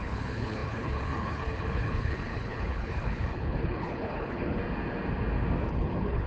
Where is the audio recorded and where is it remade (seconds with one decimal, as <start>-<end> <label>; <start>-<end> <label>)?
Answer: 0.0-4.6 remade; 4.6-5.7 recorded; 5.7-6.3 remade

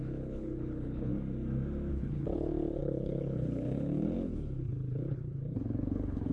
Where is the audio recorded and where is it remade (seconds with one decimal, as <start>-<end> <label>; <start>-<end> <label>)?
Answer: 0.0-1.1 remade; 1.1-1.9 recorded; 1.9-6.3 remade

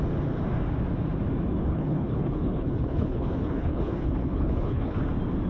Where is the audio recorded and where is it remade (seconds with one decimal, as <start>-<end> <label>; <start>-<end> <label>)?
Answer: 0.0-1.7 recorded; 1.7-5.0 remade; 5.0-5.5 recorded

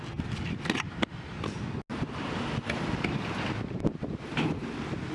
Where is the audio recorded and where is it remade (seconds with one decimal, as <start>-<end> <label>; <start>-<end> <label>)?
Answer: 0.0-5.1 recorded

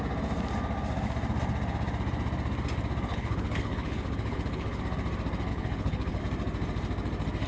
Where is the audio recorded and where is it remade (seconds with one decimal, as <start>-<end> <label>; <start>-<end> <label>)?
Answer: 0.0-3.1 recorded; 3.1-4.8 remade; 4.8-5.5 recorded; 5.5-6.2 remade; 6.2-7.5 recorded